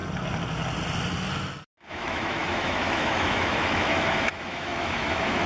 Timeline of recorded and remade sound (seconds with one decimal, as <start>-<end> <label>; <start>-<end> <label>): 0.0-1.9 recorded; 1.9-5.5 remade